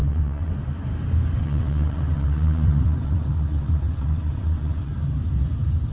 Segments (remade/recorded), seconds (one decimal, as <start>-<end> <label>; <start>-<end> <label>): 0.0-0.5 remade; 0.5-1.4 recorded; 1.4-4.9 remade; 4.9-5.9 recorded